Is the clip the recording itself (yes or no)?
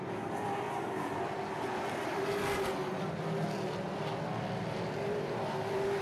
yes